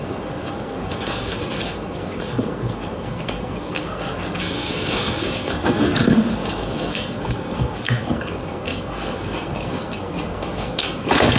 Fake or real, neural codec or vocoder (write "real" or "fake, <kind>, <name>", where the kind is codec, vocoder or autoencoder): fake, codec, SNAC